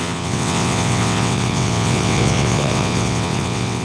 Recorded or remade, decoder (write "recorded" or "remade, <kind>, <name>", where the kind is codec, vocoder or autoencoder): remade, vocoder, WaveNeXt